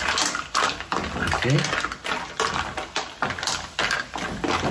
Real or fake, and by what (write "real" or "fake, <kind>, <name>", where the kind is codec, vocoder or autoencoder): real